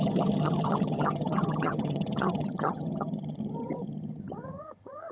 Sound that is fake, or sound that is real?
fake